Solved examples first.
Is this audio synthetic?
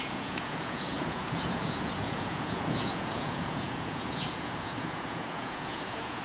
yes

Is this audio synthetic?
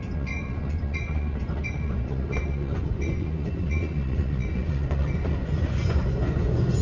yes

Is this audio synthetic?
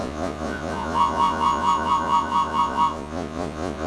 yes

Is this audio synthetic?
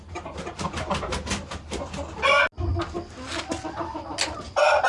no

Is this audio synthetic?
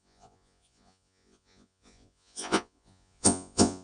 yes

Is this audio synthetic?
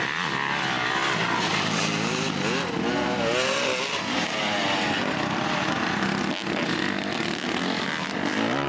no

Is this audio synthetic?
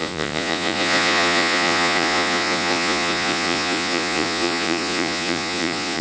yes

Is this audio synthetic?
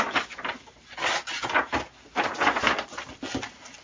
no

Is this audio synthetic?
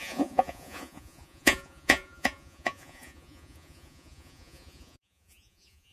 yes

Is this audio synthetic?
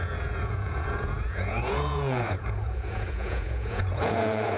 yes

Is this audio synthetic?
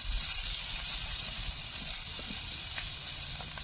no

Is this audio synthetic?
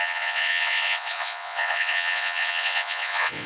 yes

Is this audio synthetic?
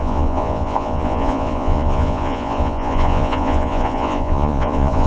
yes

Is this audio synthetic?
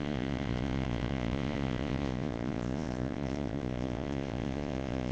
yes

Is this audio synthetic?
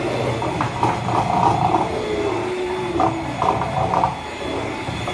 no